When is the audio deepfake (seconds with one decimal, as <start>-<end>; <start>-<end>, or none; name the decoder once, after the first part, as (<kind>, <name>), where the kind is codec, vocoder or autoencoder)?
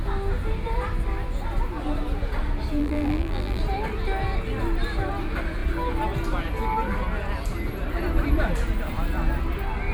2.8-3.6 (vocoder, BigVGAN v2)